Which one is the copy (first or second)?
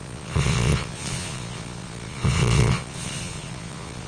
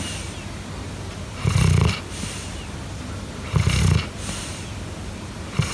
first